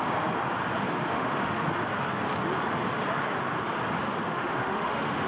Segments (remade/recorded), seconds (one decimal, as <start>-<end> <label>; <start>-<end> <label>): 0.0-1.0 recorded; 1.0-1.7 remade; 1.7-4.3 recorded; 4.3-5.3 remade